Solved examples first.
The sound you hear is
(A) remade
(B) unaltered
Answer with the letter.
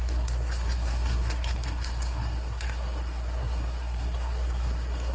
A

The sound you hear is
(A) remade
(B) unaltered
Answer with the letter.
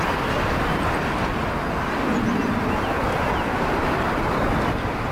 B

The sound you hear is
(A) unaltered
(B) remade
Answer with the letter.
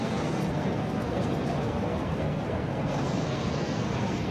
B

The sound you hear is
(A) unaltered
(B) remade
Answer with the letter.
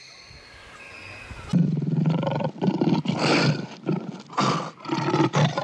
A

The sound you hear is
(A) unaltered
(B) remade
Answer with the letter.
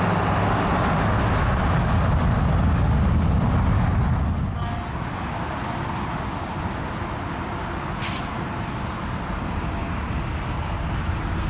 A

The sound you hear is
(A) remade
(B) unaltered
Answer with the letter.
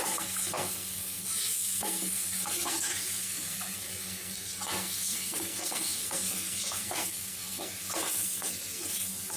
A